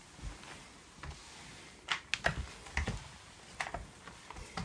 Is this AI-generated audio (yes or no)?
no